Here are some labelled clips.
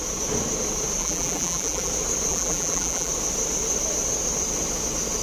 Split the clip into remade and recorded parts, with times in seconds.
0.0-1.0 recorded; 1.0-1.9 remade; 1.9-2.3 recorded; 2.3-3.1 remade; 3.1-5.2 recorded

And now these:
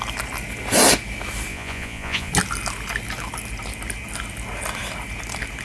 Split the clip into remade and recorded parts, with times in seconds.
0.0-1.5 recorded; 1.5-2.3 remade; 2.3-5.6 recorded